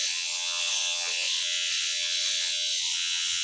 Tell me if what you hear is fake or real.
fake